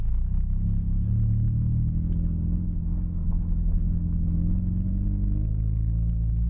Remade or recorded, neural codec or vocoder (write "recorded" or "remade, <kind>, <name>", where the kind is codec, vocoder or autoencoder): recorded